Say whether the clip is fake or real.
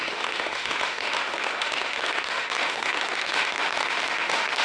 fake